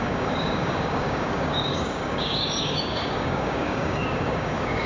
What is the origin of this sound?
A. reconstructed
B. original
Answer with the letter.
A